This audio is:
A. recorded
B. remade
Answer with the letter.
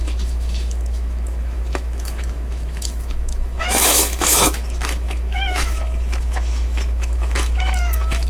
B